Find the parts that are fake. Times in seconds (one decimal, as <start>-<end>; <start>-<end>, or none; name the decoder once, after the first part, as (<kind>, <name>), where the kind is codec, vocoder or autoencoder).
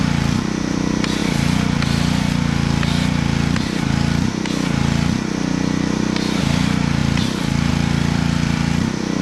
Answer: 0.0-1.2 (vocoder, BigVGAN v2); 6.4-7.0; 7.7-9.2